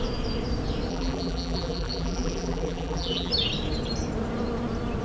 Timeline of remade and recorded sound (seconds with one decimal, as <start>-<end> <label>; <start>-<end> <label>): 0.0-0.9 recorded; 0.9-3.3 remade; 3.3-5.0 recorded